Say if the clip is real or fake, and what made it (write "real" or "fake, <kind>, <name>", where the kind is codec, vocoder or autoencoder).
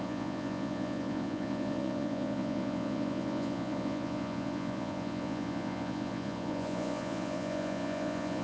fake, vocoder, Vocos